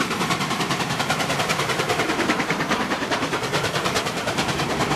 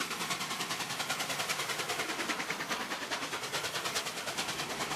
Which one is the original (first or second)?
second